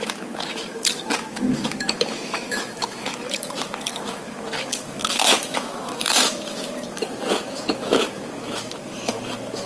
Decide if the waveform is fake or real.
fake